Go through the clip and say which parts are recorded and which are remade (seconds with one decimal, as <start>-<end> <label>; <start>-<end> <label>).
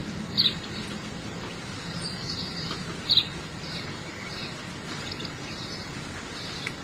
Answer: 0.0-4.1 remade; 4.1-6.8 recorded